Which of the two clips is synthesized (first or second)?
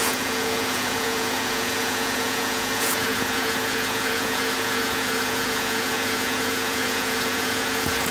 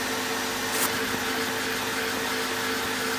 first